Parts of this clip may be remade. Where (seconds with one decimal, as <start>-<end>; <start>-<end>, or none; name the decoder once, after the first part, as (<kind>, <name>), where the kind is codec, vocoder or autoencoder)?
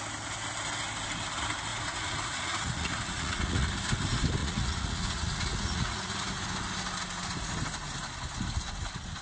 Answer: 1.7-3.7 (vocoder, Vocos); 4.4-6.3